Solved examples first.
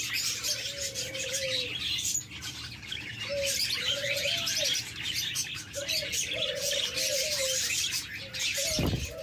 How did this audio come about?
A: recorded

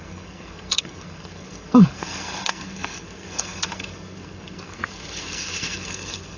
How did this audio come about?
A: remade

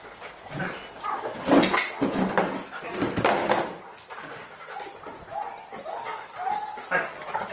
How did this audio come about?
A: recorded